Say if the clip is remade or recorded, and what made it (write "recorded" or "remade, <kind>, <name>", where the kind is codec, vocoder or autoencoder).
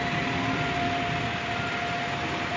recorded